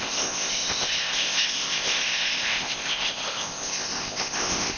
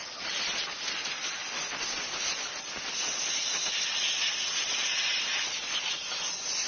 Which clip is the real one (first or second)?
second